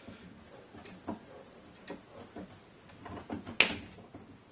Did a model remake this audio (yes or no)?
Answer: no